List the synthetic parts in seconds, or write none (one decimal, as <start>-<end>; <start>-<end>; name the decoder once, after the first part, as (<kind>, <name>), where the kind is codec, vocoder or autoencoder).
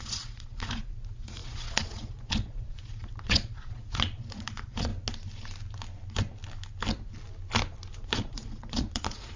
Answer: 0.0-4.9 (vocoder, Vocos); 8.0-9.4